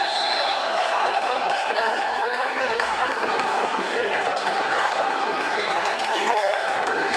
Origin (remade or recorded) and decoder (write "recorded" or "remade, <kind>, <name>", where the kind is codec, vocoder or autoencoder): remade, codec, SNAC